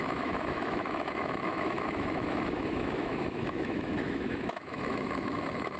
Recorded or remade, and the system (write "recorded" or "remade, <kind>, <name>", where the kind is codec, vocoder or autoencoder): remade, autoencoder, DAC-VAE